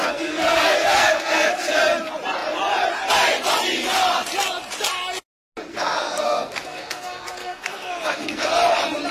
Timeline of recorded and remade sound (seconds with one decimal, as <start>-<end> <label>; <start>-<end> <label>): 0.0-1.8 remade; 1.8-5.7 recorded; 5.7-8.5 remade; 8.5-9.1 recorded